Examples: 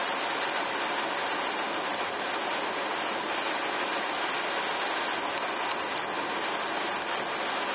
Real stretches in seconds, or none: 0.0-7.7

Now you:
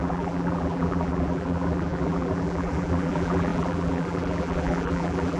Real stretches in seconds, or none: none

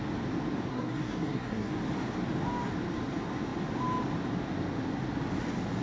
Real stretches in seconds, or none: 0.0-0.7; 1.7-5.8